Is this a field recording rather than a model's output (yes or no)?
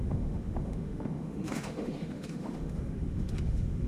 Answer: no